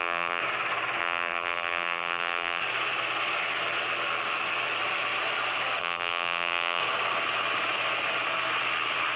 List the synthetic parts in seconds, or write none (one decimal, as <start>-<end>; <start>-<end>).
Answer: 0.0-0.4; 1.0-2.6; 5.8-6.8